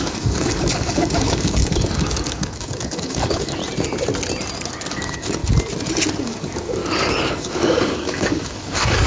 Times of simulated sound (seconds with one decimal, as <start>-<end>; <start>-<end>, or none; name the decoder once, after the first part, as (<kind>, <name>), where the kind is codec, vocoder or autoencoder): 0.0-3.6 (codec, DAC); 4.9-5.4; 6.2-6.8; 7.3-9.1